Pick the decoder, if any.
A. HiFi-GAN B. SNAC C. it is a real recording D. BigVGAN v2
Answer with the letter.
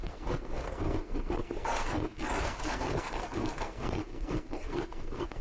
B